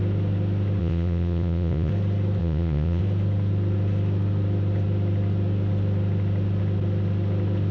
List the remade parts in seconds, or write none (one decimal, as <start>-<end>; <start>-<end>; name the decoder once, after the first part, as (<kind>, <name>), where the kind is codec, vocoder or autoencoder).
0.8-1.9 (vocoder, Vocos); 2.4-3.0